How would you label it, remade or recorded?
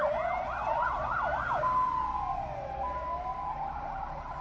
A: recorded